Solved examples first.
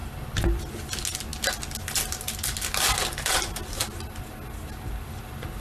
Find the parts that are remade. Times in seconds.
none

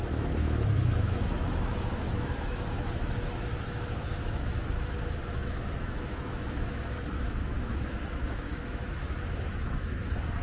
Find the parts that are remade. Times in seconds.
0.0-10.4 (autoencoder, DAC-VAE)